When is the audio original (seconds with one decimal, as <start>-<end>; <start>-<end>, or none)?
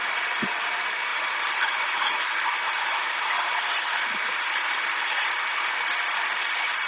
0.0-1.1; 2.5-6.9